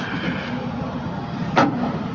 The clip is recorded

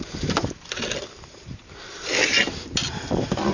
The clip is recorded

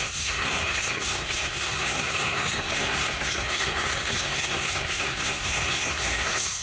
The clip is remade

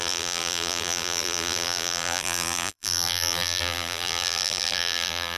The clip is remade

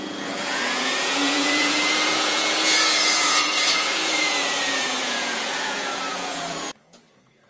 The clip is remade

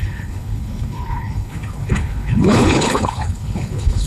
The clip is remade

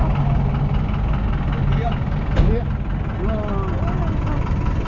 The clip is recorded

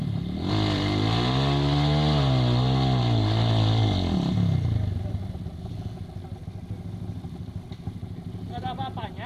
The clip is recorded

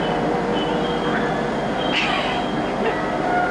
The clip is recorded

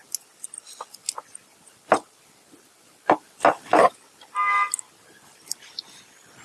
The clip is recorded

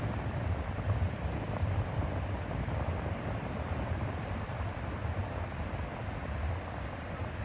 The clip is recorded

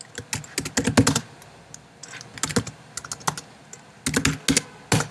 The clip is recorded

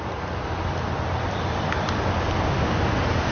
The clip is recorded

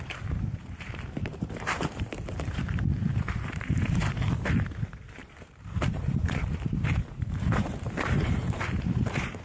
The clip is remade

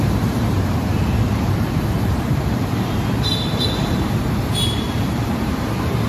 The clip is remade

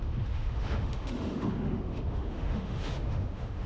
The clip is remade